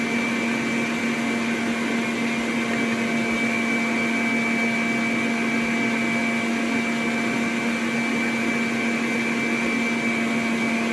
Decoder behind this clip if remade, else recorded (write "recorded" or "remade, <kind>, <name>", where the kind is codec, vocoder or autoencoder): recorded